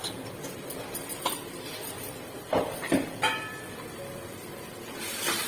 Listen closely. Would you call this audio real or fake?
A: fake